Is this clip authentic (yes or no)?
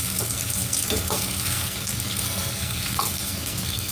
no